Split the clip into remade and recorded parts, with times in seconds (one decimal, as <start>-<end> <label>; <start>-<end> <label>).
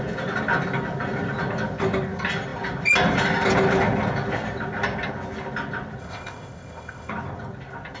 0.0-6.0 recorded; 6.0-7.1 remade; 7.1-8.0 recorded